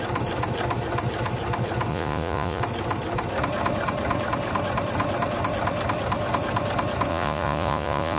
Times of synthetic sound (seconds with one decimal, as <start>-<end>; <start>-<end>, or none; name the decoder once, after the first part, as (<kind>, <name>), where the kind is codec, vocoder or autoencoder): 1.9-2.6 (vocoder, Vocos); 7.1-8.2

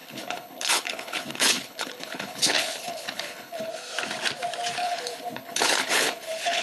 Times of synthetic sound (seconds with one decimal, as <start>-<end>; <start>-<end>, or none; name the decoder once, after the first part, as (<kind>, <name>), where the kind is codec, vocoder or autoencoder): 0.0-3.7 (codec, HILCodec); 4.8-6.6

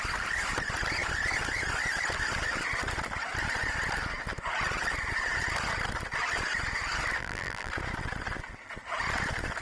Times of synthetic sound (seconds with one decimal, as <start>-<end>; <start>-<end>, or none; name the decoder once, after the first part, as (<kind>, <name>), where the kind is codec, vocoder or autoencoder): 7.2-7.7 (vocoder, BigVGAN v2)

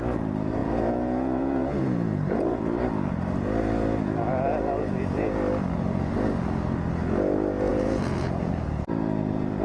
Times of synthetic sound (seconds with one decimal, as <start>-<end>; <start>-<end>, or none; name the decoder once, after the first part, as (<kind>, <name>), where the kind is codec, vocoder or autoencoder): 0.6-2.6 (vocoder, Vocos); 7.7-8.5